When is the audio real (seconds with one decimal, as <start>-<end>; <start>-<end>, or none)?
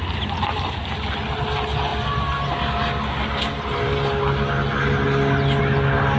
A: 0.0-6.2